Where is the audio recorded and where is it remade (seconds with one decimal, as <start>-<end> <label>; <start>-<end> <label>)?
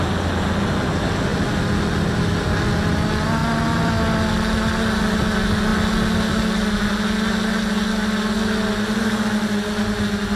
0.0-10.4 recorded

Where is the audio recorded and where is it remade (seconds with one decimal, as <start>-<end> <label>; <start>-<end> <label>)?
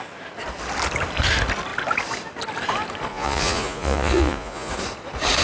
0.0-3.1 recorded; 3.1-4.7 remade; 4.7-5.4 recorded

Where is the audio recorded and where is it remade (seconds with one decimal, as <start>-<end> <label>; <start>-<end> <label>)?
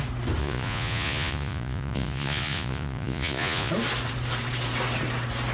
0.0-0.4 recorded; 0.4-3.7 remade; 3.7-5.5 recorded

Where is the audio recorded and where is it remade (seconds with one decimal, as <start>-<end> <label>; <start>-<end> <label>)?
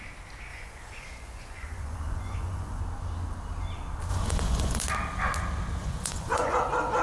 0.0-0.5 recorded; 0.5-2.8 remade; 2.8-4.1 recorded; 4.1-4.8 remade; 4.8-5.8 recorded; 5.8-6.6 remade; 6.6-7.0 recorded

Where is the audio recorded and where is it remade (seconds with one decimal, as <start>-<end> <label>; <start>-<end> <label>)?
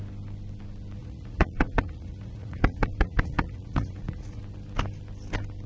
0.0-1.0 recorded; 1.0-4.4 remade; 4.4-5.7 recorded